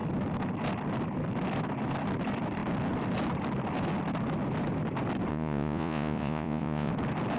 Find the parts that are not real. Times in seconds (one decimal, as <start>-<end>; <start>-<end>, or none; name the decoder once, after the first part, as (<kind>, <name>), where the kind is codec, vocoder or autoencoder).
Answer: 5.3-6.9 (vocoder, Vocos)